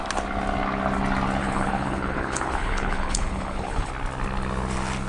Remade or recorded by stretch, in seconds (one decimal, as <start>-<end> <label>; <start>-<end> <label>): 0.0-1.4 recorded; 1.4-3.9 remade; 3.9-5.1 recorded